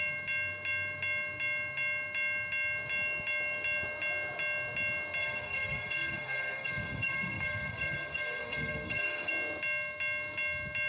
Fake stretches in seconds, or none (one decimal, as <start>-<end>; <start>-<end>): 5.2-9.3